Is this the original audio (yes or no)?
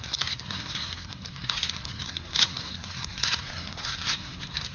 no